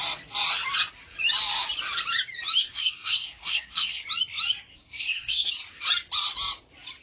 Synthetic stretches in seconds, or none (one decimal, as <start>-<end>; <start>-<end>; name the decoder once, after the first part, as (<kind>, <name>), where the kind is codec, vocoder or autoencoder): 2.6-4.0 (codec, SNAC); 4.7-5.5